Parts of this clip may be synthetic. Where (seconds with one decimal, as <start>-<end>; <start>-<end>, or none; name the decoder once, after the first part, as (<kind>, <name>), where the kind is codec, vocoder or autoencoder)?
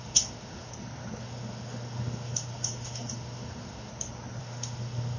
0.0-0.7 (autoencoder, DAC-VAE); 1.2-3.9; 4.4-5.2